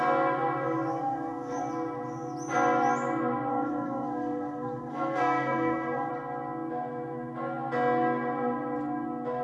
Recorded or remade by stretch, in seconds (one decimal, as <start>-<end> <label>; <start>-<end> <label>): 0.0-0.9 recorded; 0.9-1.6 remade; 1.6-3.5 recorded; 3.5-6.1 remade; 6.1-9.4 recorded

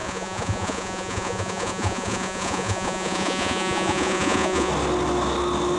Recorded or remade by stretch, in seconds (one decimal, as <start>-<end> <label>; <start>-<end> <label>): 0.0-4.7 remade; 4.7-5.8 recorded

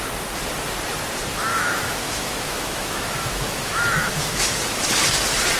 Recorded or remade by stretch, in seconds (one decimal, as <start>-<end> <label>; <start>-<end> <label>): 0.0-1.5 recorded; 1.5-4.9 remade; 4.9-5.6 recorded

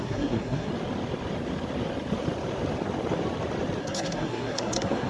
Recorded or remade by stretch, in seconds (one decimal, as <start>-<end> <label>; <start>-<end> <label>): 0.0-0.7 remade; 0.7-3.8 recorded; 3.8-5.1 remade